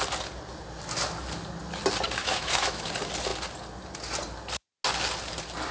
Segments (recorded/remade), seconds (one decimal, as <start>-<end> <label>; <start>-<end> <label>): 0.0-2.2 recorded; 2.2-2.9 remade; 2.9-5.7 recorded